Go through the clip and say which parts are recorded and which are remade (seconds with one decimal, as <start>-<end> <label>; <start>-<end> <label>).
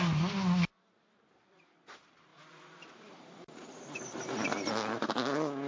0.0-5.7 recorded